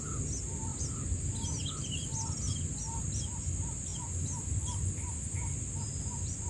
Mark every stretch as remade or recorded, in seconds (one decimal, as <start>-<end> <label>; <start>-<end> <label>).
0.0-0.7 recorded; 0.7-3.0 remade; 3.0-6.5 recorded